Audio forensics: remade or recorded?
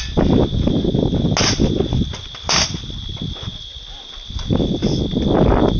recorded